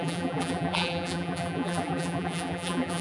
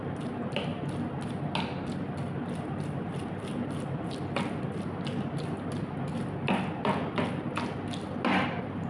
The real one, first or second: second